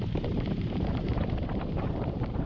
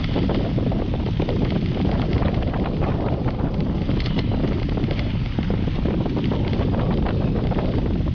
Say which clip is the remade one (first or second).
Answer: first